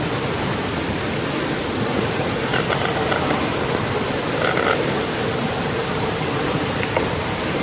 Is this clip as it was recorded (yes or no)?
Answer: yes